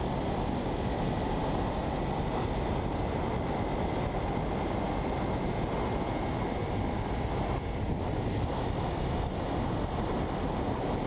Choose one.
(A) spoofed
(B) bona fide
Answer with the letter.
B